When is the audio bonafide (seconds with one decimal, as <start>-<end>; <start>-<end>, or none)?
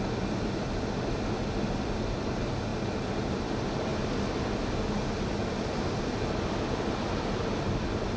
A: 0.0-8.2